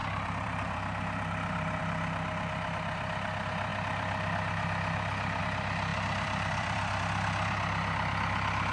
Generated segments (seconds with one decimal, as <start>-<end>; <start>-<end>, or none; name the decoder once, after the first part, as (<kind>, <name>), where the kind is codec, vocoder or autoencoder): 0.0-1.8 (vocoder, BigVGAN v2); 5.9-7.0